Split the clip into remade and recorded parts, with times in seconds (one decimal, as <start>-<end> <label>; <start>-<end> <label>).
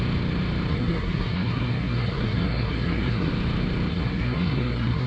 0.0-0.7 recorded; 0.7-3.3 remade; 3.3-3.9 recorded; 3.9-5.1 remade